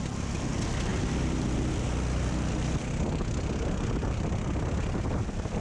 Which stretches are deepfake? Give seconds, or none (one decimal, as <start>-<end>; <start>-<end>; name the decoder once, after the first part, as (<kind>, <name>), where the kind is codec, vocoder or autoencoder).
none